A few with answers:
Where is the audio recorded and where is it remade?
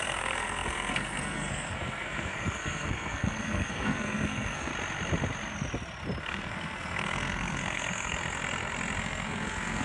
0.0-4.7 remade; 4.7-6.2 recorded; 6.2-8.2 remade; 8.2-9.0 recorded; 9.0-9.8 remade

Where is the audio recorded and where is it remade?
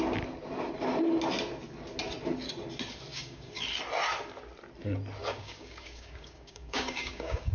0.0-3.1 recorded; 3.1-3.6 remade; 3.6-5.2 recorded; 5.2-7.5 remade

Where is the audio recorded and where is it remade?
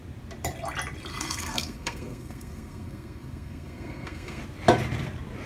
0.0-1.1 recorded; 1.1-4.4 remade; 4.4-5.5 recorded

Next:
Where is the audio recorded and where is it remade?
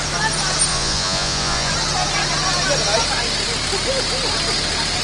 0.0-0.7 recorded; 0.7-1.7 remade; 1.7-5.0 recorded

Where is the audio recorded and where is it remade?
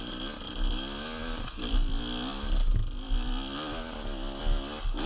0.0-5.1 recorded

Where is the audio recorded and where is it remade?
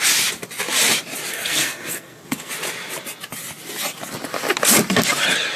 0.0-1.3 recorded; 1.3-2.5 remade; 2.5-5.6 recorded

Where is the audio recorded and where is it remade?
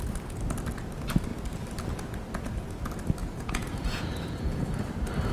0.0-3.2 recorded; 3.2-4.8 remade; 4.8-5.3 recorded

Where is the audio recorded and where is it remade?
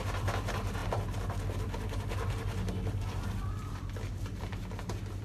0.0-5.2 recorded